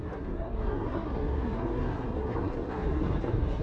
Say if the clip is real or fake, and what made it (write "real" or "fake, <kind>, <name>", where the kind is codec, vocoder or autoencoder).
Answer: fake, codec, SNAC